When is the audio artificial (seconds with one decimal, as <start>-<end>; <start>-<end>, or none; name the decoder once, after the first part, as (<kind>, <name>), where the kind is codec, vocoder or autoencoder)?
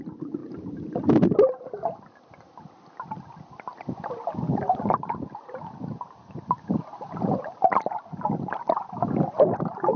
none